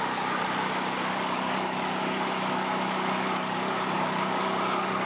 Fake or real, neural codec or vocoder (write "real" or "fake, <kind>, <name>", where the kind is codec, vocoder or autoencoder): fake, codec, DAC